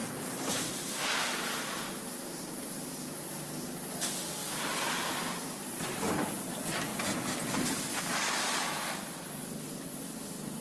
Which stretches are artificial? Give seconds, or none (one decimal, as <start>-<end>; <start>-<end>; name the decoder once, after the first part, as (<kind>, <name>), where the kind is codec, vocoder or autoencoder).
0.0-2.0 (vocoder, BigVGAN v2); 4.4-6.1